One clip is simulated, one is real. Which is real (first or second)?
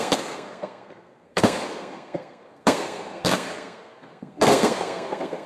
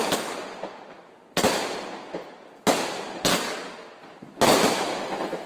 second